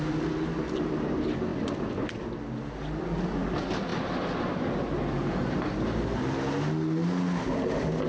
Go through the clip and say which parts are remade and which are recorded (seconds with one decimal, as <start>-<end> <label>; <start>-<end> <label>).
0.0-1.5 recorded; 1.5-2.3 remade; 2.3-3.9 recorded; 3.9-4.4 remade; 4.4-8.1 recorded